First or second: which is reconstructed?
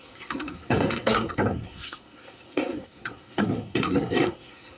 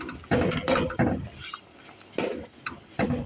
first